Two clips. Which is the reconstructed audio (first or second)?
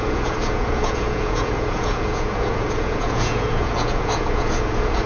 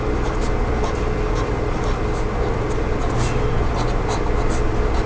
first